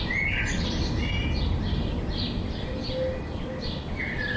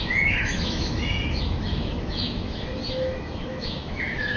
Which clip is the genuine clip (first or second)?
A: first